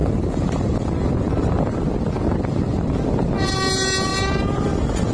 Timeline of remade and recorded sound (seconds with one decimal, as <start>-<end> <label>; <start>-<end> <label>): 0.0-5.1 recorded